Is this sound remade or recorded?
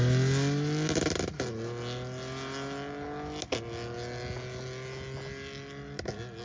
recorded